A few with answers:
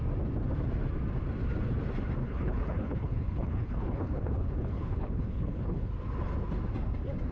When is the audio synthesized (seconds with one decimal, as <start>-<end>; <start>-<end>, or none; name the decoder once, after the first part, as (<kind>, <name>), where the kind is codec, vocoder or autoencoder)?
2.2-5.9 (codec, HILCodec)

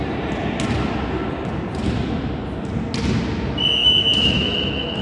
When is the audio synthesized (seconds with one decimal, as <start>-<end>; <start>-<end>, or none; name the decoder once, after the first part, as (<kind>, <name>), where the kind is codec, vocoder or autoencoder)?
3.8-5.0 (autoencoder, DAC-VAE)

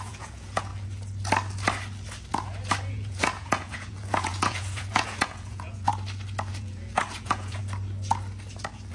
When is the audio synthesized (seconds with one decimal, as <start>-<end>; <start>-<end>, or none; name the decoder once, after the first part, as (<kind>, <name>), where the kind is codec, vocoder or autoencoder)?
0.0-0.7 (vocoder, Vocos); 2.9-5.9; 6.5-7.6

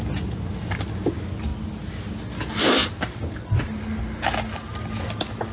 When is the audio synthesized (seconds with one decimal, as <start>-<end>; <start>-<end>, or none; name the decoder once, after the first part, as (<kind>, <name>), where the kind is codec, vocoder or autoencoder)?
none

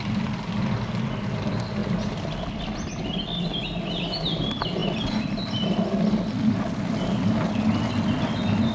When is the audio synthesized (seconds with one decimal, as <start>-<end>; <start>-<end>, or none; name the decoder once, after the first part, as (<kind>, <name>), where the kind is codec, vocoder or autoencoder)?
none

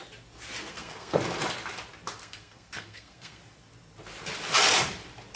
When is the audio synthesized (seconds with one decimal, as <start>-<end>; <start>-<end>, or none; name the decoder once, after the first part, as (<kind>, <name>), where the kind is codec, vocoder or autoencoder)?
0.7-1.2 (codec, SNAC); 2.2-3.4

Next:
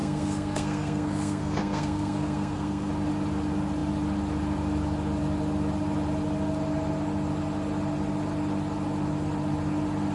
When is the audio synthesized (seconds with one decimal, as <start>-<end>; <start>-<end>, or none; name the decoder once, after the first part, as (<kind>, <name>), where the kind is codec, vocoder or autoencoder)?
0.0-2.9 (codec, SNAC)

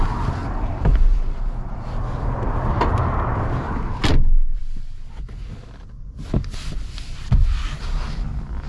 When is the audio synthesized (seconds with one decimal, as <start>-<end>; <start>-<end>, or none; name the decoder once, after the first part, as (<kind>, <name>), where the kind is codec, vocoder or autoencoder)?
0.4-2.0 (vocoder, BigVGAN v2); 4.1-4.6